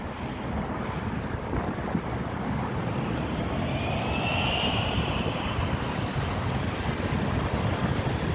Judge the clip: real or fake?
real